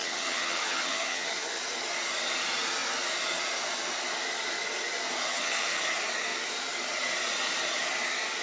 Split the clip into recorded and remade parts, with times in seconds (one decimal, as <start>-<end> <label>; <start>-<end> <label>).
0.0-1.6 remade; 1.6-5.3 recorded; 5.3-5.8 remade; 5.8-8.4 recorded